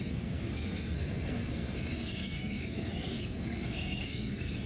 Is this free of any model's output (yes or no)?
no